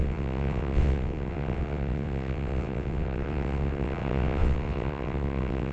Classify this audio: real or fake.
fake